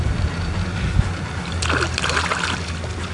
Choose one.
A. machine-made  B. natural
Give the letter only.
B